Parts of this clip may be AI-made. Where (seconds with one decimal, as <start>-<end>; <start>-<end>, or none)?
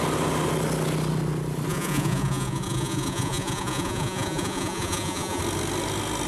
1.7-5.4